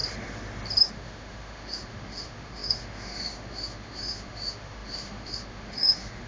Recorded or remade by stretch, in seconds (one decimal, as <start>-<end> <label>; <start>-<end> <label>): 0.0-0.8 recorded; 0.8-6.3 remade